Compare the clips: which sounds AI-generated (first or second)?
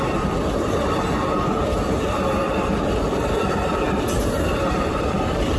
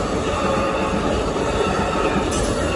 first